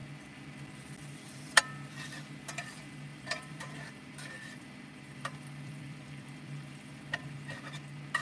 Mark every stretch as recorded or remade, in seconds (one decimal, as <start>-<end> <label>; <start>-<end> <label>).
0.0-3.1 recorded; 3.1-7.1 remade; 7.1-8.2 recorded